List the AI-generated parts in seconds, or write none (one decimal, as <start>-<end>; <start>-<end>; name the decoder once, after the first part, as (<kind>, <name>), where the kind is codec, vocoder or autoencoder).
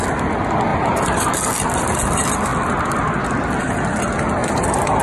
0.7-1.3 (vocoder, BigVGAN v2); 4.4-5.0